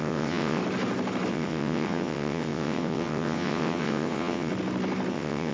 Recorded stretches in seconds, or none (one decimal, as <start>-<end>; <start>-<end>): 0.6-1.3; 4.5-5.1